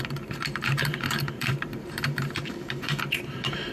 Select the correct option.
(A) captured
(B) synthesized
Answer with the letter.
B